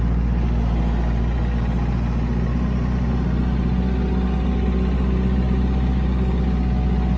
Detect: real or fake real